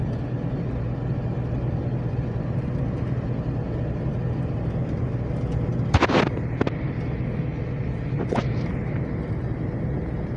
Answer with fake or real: real